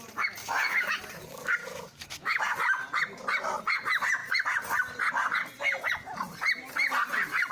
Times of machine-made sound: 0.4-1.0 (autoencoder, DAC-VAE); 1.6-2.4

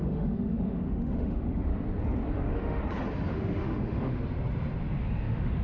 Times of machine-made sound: 0.0-1.7 (autoencoder, DAC-VAE); 2.3-2.8; 3.3-4.1; 5.0-5.6

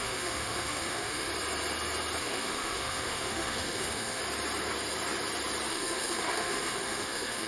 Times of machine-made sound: 0.0-1.3 (autoencoder, DAC-VAE); 2.2-4.2; 5.7-7.5